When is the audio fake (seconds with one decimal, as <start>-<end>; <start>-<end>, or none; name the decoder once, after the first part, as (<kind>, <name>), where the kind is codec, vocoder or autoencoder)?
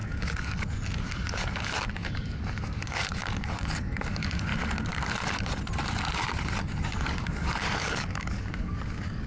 0.0-4.5 (codec, DAC); 6.6-9.3